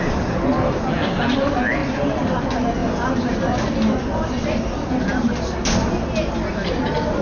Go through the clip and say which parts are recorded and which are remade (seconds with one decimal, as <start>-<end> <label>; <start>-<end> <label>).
0.0-7.2 recorded